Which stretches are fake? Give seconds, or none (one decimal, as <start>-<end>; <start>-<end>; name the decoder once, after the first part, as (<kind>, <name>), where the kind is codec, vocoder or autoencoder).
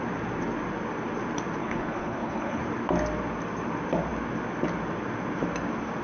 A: 1.6-2.6 (codec, HILCodec)